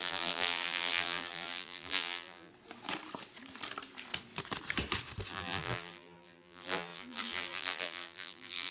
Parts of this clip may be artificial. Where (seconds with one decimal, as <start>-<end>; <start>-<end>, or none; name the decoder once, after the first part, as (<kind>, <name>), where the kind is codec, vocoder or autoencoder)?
0.0-2.5 (vocoder, BigVGAN v2); 5.3-8.7

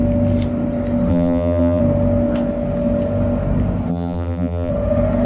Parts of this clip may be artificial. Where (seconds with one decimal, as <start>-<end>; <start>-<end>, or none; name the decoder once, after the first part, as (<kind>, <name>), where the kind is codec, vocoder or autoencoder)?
1.1-1.8 (vocoder, BigVGAN v2); 3.9-4.7

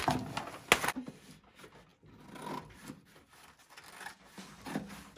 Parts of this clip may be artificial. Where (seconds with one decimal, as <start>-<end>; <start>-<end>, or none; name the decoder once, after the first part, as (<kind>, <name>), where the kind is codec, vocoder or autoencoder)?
none

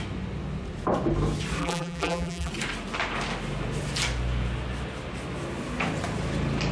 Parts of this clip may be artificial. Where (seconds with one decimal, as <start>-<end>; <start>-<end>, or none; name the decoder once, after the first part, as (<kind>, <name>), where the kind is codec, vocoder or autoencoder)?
1.6-2.5 (vocoder, BigVGAN v2)